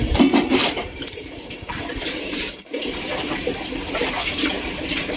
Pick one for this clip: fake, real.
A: fake